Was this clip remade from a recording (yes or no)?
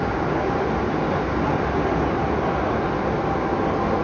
no